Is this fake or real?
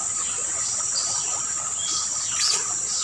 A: real